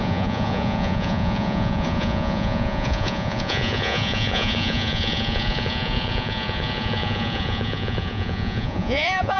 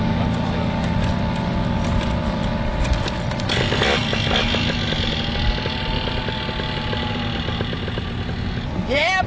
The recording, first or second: second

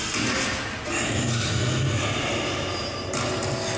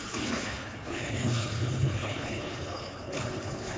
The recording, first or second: first